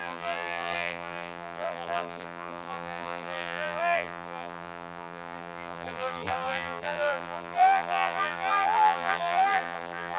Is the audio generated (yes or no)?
yes